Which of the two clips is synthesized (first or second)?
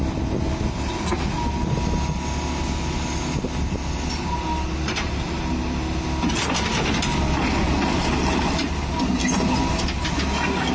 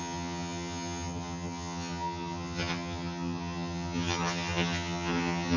second